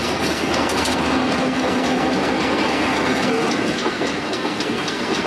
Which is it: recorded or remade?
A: remade